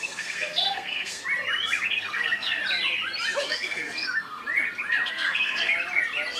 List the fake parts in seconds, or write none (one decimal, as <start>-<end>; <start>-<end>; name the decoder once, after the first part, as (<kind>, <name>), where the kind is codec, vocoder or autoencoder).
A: 0.0-1.2 (codec, SNAC); 1.9-2.6; 3.4-4.4; 5.1-5.7